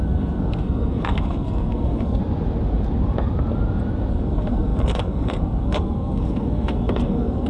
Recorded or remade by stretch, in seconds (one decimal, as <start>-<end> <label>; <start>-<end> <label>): 0.0-2.2 remade; 2.2-4.1 recorded; 4.1-7.5 remade